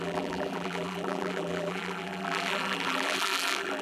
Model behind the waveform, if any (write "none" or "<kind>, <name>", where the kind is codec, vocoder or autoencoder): vocoder, BigVGAN v2